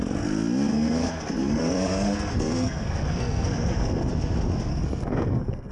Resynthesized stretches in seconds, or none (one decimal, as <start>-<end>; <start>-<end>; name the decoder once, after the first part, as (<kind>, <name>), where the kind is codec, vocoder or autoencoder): 0.7-4.1 (codec, SNAC); 4.7-5.7